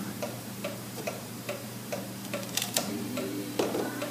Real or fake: fake